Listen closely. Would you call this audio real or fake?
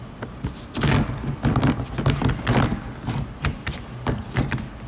real